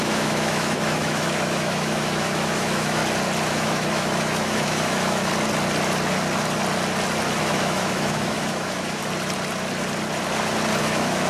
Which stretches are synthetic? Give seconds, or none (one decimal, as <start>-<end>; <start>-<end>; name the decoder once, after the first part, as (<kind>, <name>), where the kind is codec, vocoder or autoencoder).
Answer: 0.0-3.0 (autoencoder, DAC-VAE); 3.5-5.3; 7.4-9.0; 10.8-11.3